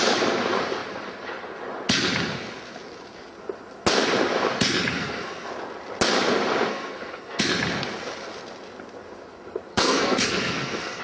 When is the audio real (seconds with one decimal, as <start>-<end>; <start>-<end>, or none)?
0.0-4.9; 5.5-6.7; 7.4-9.7